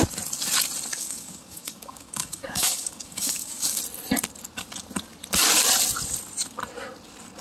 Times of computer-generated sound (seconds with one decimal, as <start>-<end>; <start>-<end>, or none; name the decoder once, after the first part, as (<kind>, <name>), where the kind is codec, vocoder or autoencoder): 0.9-3.8 (codec, DAC)